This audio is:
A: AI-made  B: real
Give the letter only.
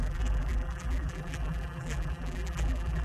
A